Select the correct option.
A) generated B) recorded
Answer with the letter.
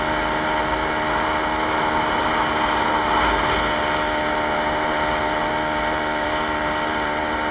B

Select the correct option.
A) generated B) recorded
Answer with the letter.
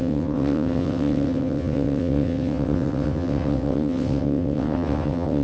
A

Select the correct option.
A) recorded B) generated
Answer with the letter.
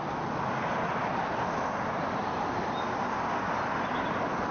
A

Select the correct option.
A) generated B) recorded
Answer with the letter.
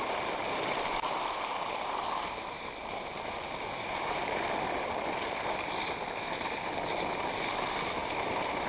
B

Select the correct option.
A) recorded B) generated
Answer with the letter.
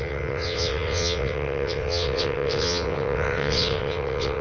B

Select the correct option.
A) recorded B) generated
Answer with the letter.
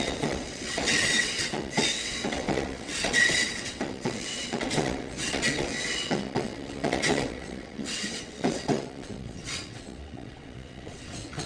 B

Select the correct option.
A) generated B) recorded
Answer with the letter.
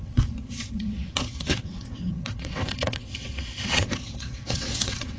A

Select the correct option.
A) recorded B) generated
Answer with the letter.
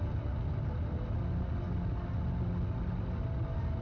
A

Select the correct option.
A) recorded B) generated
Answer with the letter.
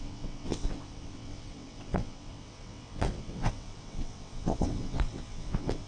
B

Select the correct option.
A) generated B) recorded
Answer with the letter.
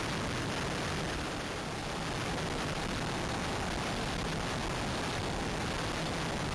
B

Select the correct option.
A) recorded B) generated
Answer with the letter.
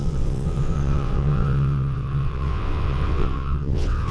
B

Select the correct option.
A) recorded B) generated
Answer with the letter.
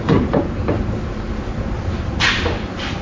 A